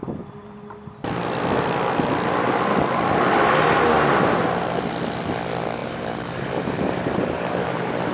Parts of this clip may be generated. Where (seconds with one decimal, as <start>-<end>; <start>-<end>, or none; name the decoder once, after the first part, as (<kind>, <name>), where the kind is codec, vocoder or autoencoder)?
5.8-8.1 (vocoder, BigVGAN v2)